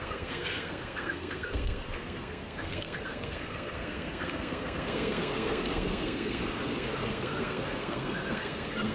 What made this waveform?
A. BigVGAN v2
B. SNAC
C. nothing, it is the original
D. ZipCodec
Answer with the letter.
B